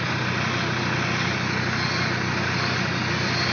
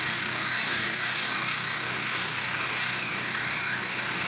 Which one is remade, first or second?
second